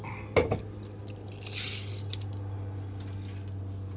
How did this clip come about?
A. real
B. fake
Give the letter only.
A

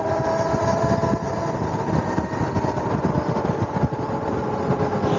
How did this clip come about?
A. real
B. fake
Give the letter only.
A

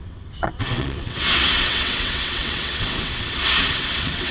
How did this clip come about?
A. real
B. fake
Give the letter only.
B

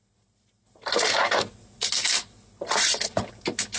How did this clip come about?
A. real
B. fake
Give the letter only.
A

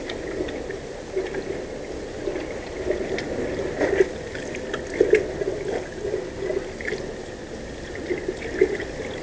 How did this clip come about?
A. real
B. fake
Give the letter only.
A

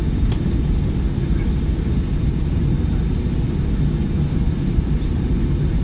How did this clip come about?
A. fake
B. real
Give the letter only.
B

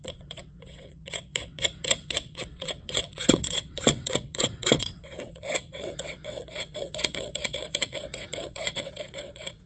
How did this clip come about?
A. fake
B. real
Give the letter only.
A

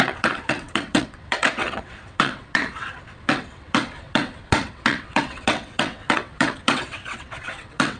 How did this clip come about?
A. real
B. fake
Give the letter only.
B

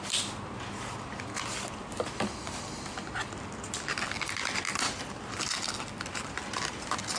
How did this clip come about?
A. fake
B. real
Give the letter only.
B